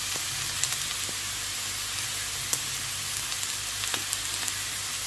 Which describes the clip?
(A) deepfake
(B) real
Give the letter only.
B